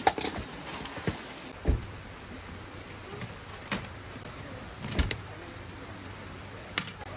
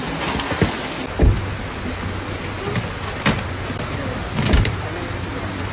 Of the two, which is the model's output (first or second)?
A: first